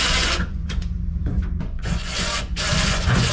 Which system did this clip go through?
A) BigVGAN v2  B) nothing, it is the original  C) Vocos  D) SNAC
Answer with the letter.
C